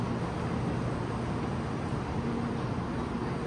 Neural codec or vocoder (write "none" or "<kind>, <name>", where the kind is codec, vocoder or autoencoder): none